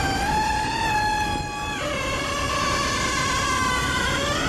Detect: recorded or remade recorded